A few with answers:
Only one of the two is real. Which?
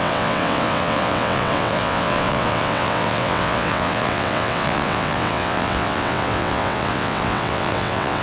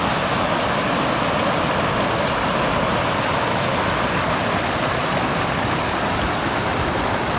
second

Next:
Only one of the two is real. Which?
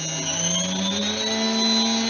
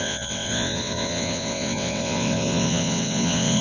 first